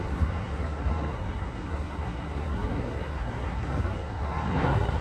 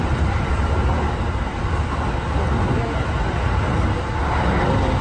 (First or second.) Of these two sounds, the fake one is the first